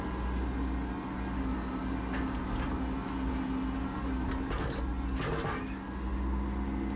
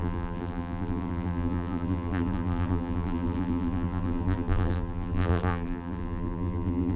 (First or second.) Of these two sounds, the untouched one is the first